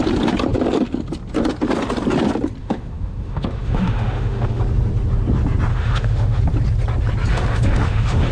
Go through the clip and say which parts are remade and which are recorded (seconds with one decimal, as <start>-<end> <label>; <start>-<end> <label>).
0.0-2.6 recorded; 2.6-4.6 remade; 4.6-5.7 recorded; 5.7-6.4 remade; 6.4-7.3 recorded; 7.3-8.3 remade